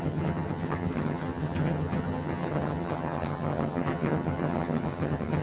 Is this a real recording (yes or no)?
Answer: no